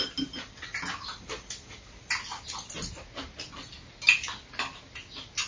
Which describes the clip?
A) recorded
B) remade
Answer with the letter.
A